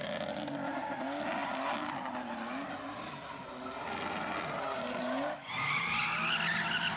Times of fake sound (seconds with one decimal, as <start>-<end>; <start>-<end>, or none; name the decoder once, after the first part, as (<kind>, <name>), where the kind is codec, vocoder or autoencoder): none